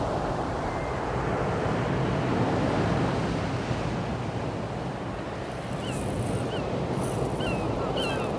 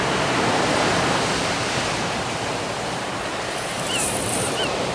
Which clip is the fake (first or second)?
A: second